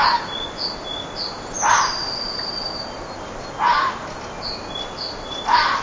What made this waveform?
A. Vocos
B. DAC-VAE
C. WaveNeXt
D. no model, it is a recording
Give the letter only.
D